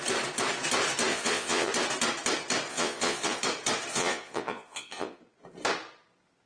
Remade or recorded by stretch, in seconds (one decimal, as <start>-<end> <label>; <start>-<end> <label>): 0.0-1.1 recorded; 1.1-1.7 remade; 1.7-2.7 recorded; 2.7-3.4 remade; 3.4-3.9 recorded; 3.9-5.2 remade; 5.2-6.5 recorded